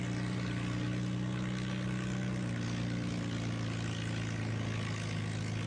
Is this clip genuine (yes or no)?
yes